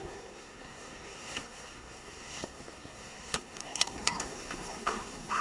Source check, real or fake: fake